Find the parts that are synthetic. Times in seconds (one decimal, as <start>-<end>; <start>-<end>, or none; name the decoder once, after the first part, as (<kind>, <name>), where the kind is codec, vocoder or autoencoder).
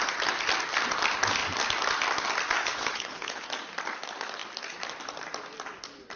2.6-3.4 (codec, HILCodec)